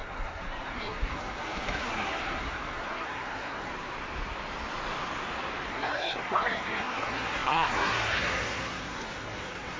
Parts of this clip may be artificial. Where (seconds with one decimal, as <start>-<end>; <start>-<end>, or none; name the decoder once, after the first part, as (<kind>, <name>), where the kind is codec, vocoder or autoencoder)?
0.0-3.7 (codec, SNAC); 5.7-9.8

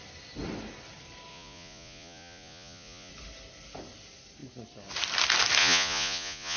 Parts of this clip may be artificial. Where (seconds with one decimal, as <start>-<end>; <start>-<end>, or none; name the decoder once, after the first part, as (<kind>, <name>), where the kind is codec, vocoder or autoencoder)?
1.3-3.1 (vocoder, Vocos); 5.6-6.6